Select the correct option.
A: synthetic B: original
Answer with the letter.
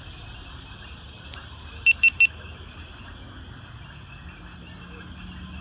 B